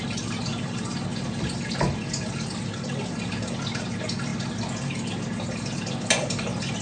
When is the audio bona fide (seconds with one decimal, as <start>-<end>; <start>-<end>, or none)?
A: 0.0-6.8